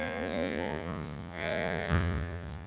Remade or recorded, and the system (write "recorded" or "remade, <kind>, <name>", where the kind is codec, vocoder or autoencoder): remade, vocoder, Vocos